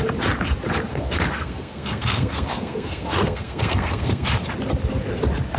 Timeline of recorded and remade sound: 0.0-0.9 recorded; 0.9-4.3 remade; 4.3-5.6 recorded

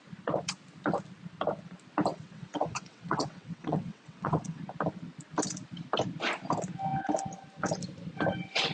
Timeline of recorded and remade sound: 0.0-2.1 recorded; 2.1-4.6 remade; 4.6-8.7 recorded